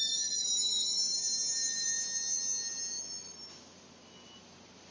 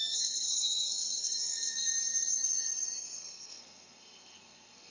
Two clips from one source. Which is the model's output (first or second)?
second